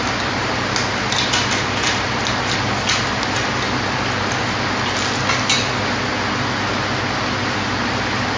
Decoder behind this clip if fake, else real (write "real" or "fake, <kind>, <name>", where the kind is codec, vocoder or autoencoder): real